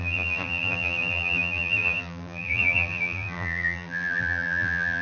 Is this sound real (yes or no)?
no